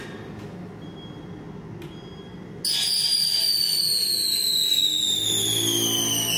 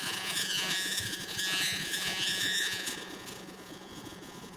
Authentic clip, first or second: first